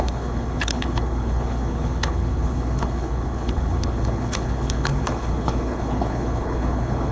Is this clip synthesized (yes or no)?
yes